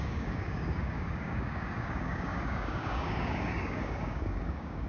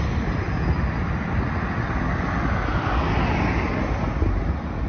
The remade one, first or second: first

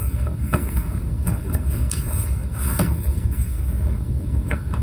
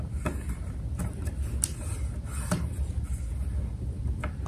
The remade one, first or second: first